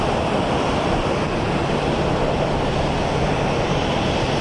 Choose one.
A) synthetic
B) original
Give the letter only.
B